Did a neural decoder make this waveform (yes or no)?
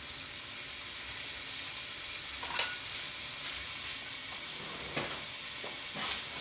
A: no